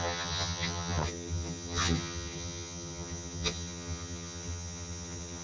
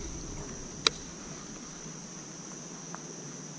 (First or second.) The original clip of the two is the second